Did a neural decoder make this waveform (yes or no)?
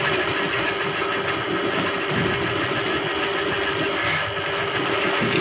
no